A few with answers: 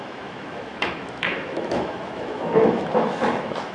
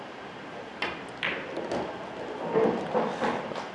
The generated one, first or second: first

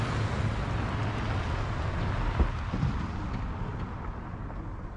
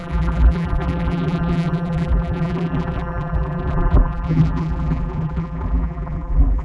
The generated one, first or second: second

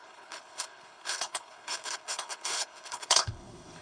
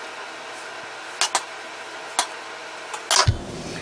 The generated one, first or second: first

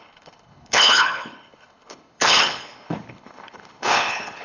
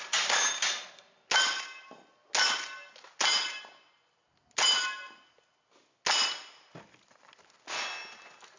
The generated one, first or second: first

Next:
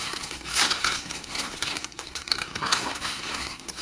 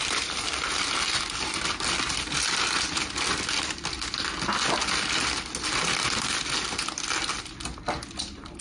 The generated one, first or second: first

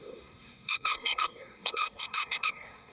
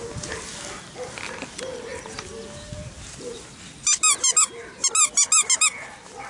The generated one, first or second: first